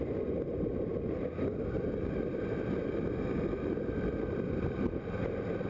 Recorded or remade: recorded